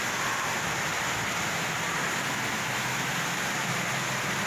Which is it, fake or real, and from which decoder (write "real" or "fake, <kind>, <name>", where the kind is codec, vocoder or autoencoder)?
real